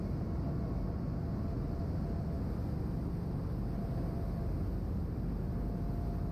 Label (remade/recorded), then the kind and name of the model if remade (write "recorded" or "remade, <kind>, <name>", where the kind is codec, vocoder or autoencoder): recorded